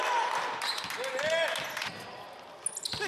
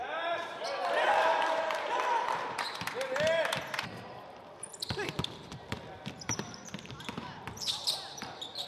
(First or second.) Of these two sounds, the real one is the first